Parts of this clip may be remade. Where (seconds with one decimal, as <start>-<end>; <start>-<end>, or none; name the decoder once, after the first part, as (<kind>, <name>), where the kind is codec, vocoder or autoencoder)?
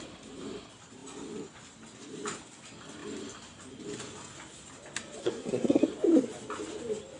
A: 5.2-5.8 (codec, SNAC)